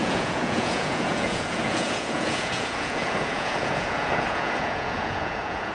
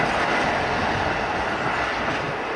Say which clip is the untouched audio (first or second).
second